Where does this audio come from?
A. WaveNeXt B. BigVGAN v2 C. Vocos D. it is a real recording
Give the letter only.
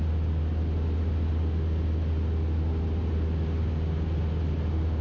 D